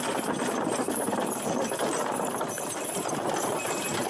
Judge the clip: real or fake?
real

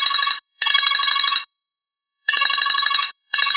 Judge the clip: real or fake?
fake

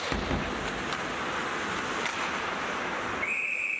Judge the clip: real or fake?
real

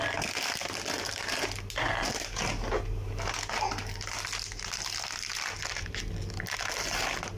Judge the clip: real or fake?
real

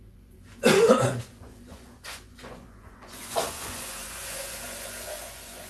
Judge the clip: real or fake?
fake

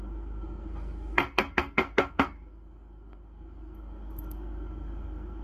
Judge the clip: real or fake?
fake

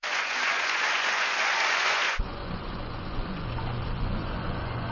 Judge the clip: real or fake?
fake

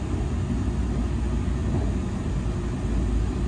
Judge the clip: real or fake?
real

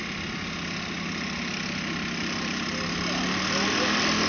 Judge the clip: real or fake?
real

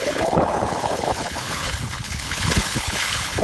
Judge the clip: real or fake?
fake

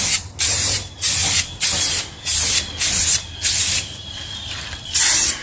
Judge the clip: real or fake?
real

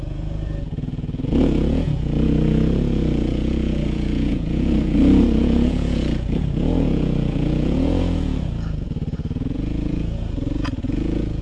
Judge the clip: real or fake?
fake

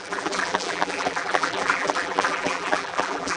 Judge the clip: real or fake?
fake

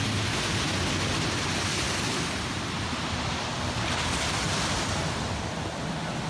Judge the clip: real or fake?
real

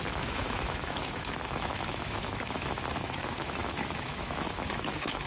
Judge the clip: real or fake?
fake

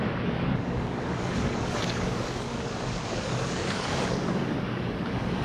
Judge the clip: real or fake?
fake